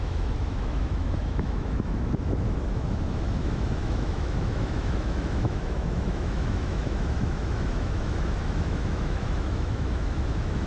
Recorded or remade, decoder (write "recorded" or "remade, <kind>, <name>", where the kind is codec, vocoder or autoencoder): remade, autoencoder, DAC-VAE